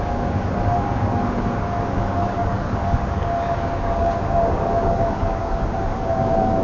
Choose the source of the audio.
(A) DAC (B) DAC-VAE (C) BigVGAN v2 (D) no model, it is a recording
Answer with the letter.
A